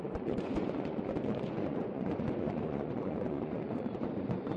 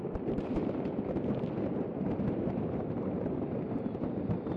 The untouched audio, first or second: second